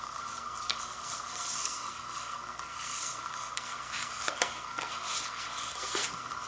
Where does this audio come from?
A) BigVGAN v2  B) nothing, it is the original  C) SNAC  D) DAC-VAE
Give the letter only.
C